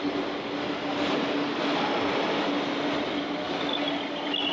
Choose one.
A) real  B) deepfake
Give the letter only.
A